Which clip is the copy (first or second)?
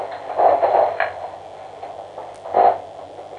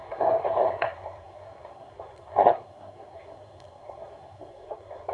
second